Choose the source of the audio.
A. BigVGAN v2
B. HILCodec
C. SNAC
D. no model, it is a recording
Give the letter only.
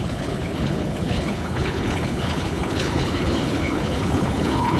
B